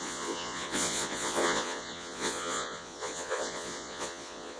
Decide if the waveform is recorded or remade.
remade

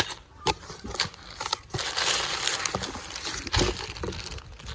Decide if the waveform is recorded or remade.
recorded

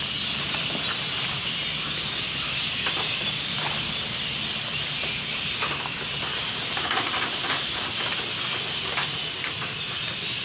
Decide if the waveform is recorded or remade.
recorded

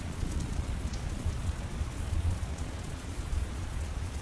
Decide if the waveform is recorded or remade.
remade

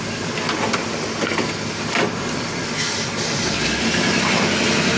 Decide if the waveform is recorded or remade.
recorded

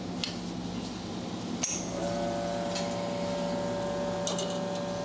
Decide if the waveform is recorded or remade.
recorded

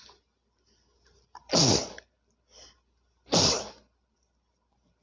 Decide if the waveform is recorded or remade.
recorded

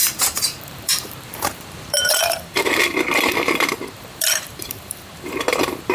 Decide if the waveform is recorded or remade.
remade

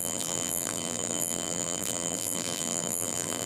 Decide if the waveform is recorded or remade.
remade